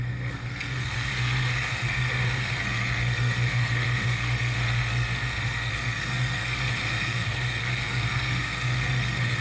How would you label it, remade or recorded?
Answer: remade